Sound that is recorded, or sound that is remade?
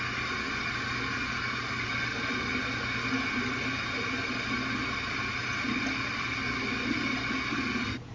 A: recorded